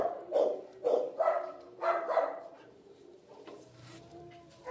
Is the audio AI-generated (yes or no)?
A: yes